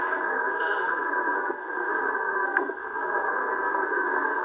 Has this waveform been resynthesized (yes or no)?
yes